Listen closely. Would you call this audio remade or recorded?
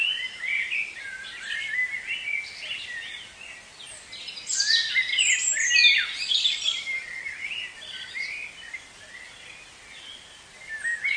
recorded